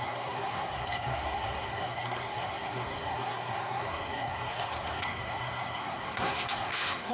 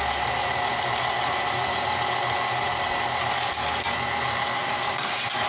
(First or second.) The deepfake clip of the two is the first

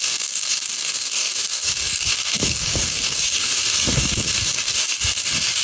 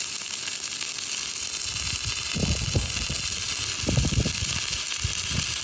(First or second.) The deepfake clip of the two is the first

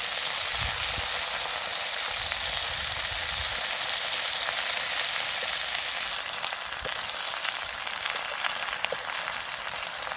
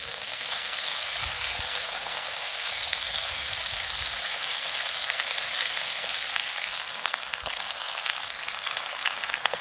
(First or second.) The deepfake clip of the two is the second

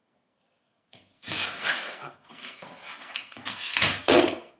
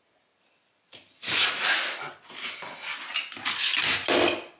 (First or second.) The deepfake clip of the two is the first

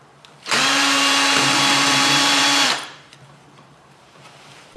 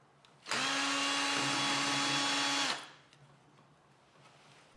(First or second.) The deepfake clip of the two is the first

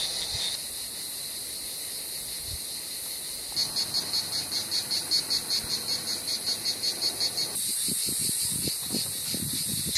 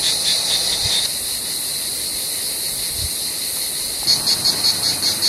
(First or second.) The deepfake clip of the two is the second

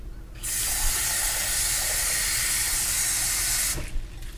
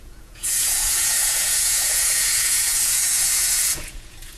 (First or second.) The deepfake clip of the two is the second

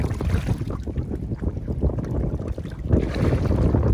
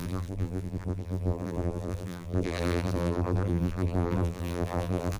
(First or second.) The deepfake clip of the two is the second